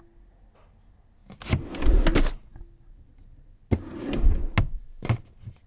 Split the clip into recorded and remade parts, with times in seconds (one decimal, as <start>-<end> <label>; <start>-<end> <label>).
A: 0.0-5.7 recorded